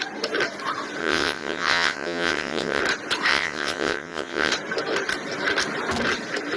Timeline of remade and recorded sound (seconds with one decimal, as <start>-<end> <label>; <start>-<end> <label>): 0.0-1.0 recorded; 1.0-2.8 remade; 2.8-3.3 recorded; 3.3-4.5 remade; 4.5-6.6 recorded